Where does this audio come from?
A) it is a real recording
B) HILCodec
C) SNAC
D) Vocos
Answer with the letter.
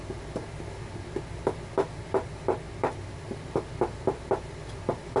A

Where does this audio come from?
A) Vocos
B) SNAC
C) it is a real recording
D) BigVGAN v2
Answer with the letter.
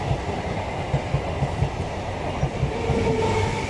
C